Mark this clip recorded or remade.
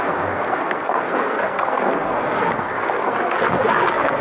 remade